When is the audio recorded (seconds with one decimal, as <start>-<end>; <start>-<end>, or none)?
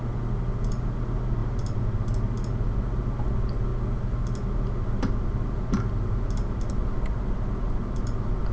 0.0-8.5